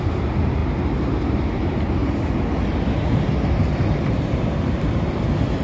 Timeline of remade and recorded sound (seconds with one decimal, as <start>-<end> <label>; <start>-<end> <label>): 0.0-2.0 remade; 2.0-4.2 recorded; 4.2-5.6 remade